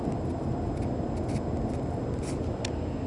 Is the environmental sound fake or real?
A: real